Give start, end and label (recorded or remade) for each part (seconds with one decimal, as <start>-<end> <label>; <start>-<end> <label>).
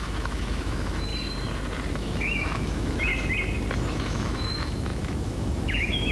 0.0-1.1 remade; 1.1-1.9 recorded; 1.9-3.1 remade; 3.1-3.9 recorded; 3.9-6.1 remade